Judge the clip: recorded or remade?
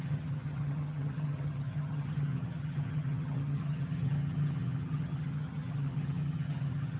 remade